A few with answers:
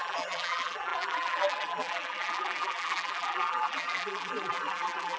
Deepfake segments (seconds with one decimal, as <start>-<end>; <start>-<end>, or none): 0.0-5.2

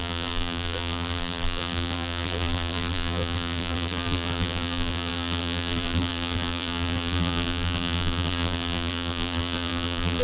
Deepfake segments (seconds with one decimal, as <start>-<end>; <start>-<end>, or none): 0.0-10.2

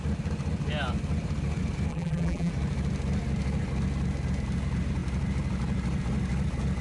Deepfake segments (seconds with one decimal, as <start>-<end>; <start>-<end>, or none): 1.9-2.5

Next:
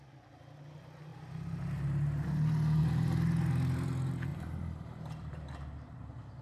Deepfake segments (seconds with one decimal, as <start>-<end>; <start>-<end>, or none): 4.3-6.4

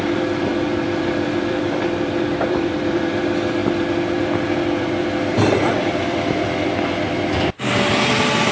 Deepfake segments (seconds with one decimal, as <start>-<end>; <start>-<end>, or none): 0.0-8.5

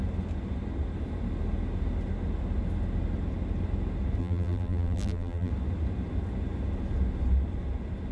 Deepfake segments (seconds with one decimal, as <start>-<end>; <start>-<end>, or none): 4.2-5.5